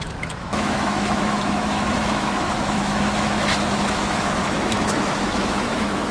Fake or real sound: fake